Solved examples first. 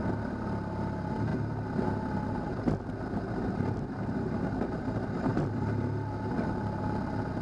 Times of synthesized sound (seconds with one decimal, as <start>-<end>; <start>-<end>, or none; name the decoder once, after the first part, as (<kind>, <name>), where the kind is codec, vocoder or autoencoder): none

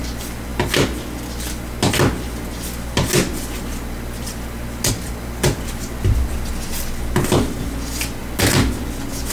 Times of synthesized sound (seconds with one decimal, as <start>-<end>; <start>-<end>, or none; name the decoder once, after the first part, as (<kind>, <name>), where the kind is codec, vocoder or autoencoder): none

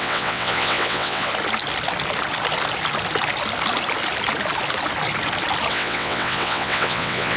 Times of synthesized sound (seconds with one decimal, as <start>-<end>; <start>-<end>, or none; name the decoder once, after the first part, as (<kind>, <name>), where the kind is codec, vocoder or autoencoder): 0.0-1.3 (vocoder, WaveNeXt); 5.7-7.4

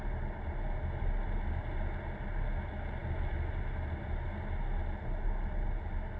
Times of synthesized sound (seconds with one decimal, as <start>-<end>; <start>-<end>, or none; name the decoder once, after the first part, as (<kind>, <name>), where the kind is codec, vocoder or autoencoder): none